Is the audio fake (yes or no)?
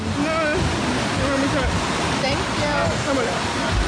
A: no